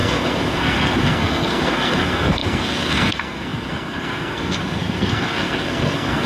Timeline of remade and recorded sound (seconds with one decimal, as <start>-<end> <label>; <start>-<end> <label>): 0.0-6.3 remade